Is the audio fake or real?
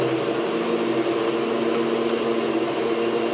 real